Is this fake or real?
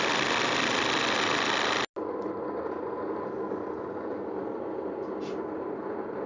real